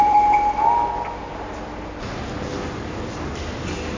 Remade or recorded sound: recorded